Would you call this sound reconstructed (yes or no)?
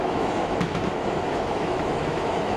yes